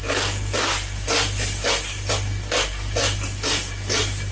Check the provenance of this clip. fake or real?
real